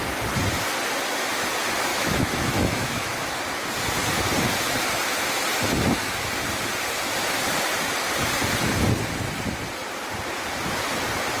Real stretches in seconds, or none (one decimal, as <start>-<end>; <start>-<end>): 0.0-1.9; 3.4-11.4